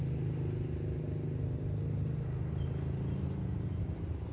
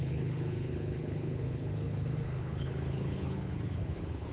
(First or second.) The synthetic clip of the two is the second